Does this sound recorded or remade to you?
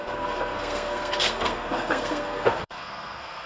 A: remade